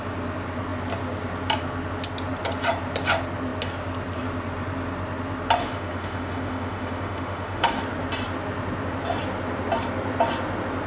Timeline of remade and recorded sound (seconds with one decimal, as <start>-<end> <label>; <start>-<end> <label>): 0.0-5.6 recorded; 5.6-7.8 remade; 7.8-10.9 recorded